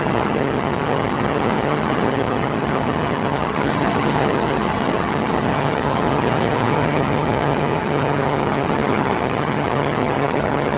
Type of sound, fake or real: fake